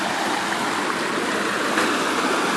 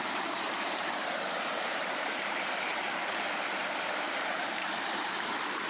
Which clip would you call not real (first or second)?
second